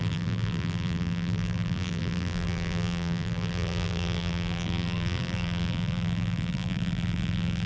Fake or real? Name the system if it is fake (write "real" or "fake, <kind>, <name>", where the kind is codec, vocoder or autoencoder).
fake, vocoder, BigVGAN v2